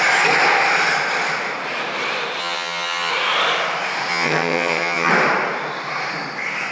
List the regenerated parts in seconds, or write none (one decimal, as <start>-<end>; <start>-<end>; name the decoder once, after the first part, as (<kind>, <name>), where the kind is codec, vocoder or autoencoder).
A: 2.4-3.1 (vocoder, HiFi-GAN); 4.1-5.1